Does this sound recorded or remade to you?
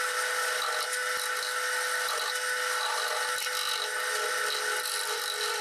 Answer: recorded